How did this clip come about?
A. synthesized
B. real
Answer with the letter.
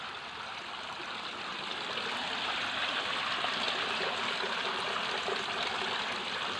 A